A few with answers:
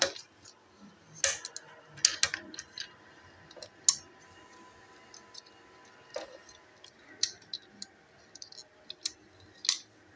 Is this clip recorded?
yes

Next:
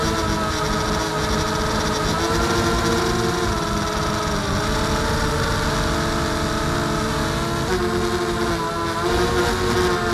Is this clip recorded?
yes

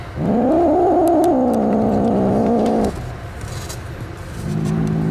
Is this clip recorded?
yes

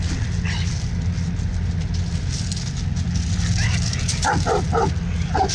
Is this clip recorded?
yes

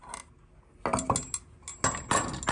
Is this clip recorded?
yes